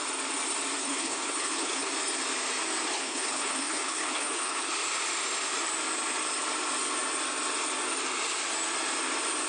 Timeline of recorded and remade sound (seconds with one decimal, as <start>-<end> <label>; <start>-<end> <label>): 0.0-0.8 recorded; 0.8-1.9 remade; 1.9-2.9 recorded; 2.9-4.7 remade; 4.7-9.5 recorded